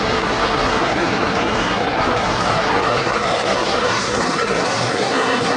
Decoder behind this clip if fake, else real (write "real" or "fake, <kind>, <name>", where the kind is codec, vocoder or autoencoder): fake, codec, SNAC